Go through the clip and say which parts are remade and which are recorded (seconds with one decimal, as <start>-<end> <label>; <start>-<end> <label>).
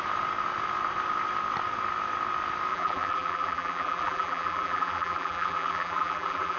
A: 0.0-2.7 recorded; 2.7-6.6 remade